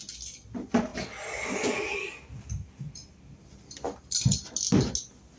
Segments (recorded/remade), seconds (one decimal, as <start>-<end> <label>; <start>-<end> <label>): 0.0-0.9 recorded; 0.9-2.2 remade; 2.2-3.0 recorded; 3.0-4.4 remade; 4.4-5.4 recorded